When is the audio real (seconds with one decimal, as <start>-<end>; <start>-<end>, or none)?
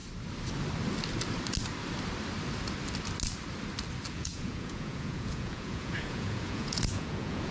0.0-4.1